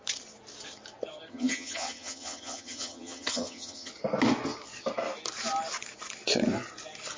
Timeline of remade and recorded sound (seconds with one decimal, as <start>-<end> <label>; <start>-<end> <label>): 0.0-1.3 recorded; 1.3-3.9 remade; 3.9-7.2 recorded